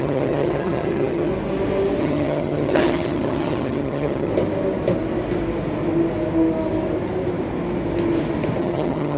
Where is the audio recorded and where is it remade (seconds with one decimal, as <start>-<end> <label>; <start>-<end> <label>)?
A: 0.0-1.3 remade; 1.3-2.0 recorded; 2.0-4.3 remade; 4.3-8.6 recorded; 8.6-9.2 remade